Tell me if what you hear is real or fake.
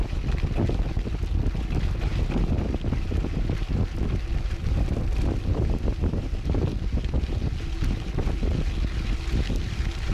real